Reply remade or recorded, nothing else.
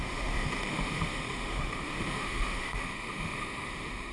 remade